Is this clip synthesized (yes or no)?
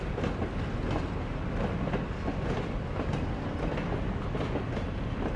no